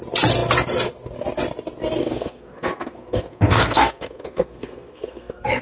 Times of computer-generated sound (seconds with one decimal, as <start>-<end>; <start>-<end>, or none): 2.0-5.6